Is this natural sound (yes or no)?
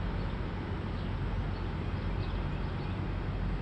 yes